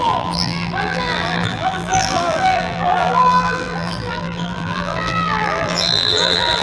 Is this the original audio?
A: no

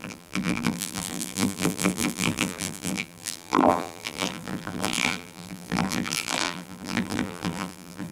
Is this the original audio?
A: no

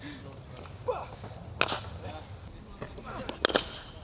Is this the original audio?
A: yes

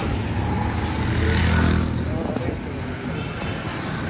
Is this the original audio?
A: yes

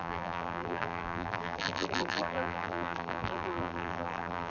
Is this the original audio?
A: no